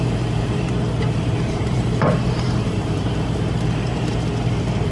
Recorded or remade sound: remade